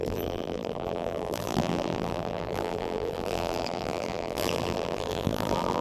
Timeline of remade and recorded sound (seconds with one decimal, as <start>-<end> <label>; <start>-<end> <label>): 0.0-5.8 remade